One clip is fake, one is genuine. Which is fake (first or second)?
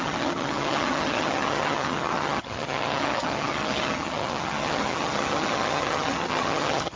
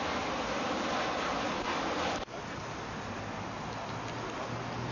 first